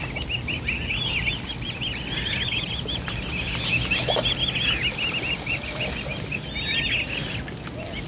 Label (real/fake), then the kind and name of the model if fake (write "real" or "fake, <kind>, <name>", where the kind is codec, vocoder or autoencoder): real